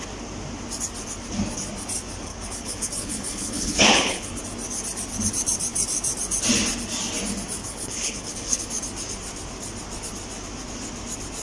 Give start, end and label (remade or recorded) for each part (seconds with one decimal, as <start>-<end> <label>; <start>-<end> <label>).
0.0-2.3 recorded; 2.3-4.4 remade; 4.4-7.6 recorded; 7.6-8.6 remade; 8.6-11.4 recorded